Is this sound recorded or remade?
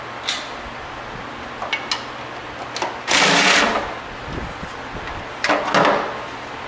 recorded